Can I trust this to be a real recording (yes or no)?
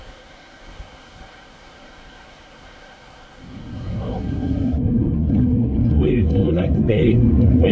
no